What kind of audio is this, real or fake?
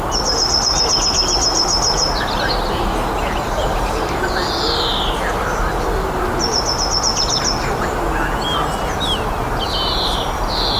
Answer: real